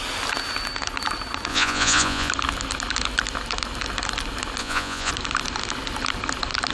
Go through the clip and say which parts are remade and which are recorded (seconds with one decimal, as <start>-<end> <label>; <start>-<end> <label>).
0.0-1.5 recorded; 1.5-2.3 remade; 2.3-4.6 recorded; 4.6-5.1 remade; 5.1-6.7 recorded